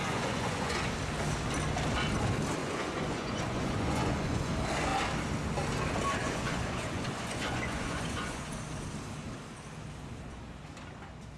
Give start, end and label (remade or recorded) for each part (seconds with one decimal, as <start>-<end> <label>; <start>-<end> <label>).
0.0-0.9 remade; 0.9-2.6 recorded; 2.6-4.5 remade; 4.5-6.2 recorded; 6.2-8.4 remade; 8.4-11.4 recorded